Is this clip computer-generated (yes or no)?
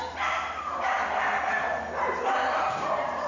no